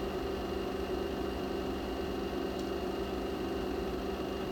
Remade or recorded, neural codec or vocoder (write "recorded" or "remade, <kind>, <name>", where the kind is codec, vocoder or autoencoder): recorded